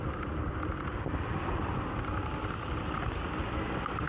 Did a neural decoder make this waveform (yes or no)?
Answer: no